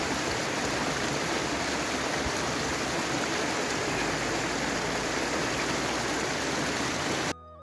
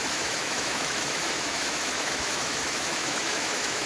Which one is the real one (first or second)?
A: first